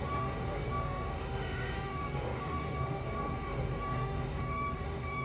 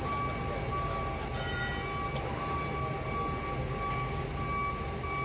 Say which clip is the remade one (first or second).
first